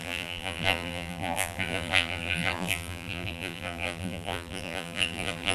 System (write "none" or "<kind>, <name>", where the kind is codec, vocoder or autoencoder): vocoder, BigVGAN v2